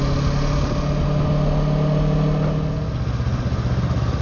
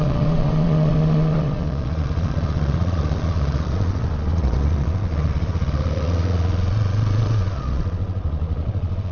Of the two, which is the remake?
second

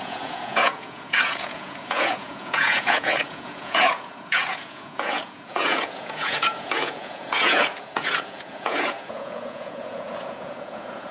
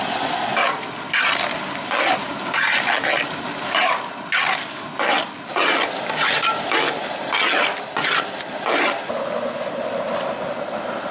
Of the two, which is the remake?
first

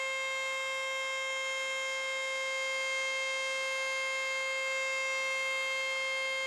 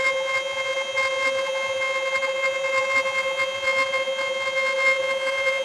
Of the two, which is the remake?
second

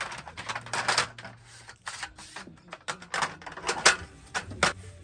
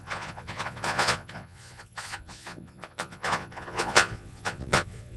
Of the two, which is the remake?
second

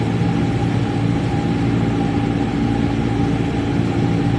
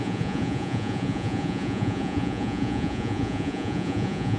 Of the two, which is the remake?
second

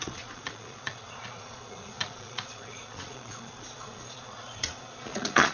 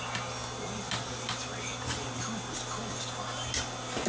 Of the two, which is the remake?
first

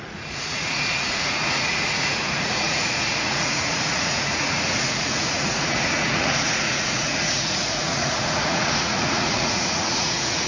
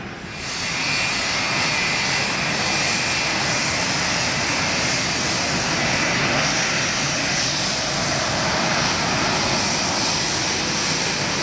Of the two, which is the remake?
first